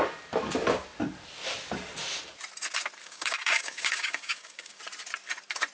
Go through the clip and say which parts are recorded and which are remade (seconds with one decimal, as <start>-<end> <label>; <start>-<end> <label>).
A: 0.0-3.0 recorded; 3.0-4.8 remade; 4.8-5.7 recorded